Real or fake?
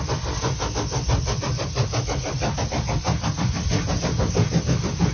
real